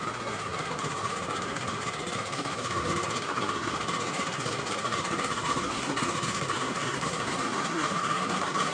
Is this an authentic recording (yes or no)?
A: no